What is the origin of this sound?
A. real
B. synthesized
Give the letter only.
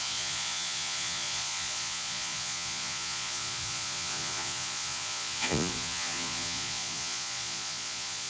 B